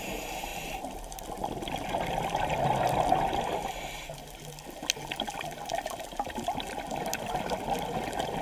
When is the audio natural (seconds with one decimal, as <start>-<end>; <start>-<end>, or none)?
0.0-8.4